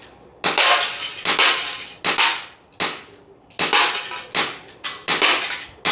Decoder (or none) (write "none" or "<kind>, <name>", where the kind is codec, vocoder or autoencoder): none